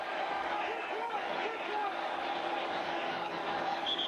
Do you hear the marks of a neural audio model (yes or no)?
yes